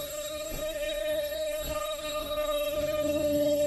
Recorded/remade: remade